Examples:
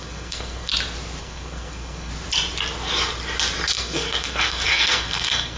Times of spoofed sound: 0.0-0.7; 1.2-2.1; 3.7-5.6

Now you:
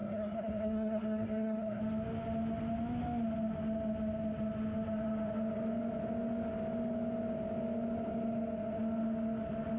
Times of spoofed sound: 0.0-1.8

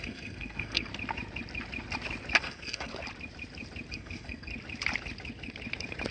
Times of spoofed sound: 0.0-0.9; 2.4-2.9; 3.9-4.5